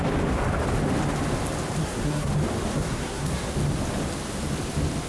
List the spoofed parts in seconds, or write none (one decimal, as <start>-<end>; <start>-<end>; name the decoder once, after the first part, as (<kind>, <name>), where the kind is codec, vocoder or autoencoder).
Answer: 1.8-2.3 (codec, SNAC); 2.7-3.5